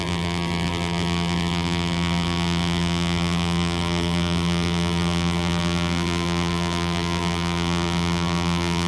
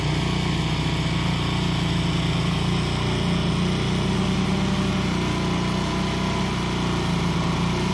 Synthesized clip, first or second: first